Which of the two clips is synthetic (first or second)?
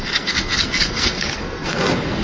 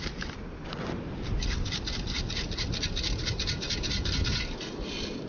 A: first